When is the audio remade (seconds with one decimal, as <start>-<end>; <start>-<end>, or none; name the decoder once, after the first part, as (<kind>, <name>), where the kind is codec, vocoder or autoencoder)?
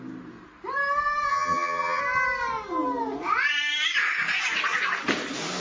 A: 1.3-2.0 (vocoder, HiFi-GAN)